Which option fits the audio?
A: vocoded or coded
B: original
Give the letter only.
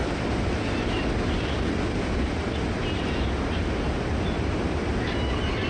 B